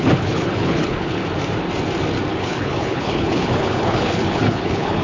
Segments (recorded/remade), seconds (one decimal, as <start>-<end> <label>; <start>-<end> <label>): 0.0-1.2 remade; 1.2-2.4 recorded; 2.4-5.0 remade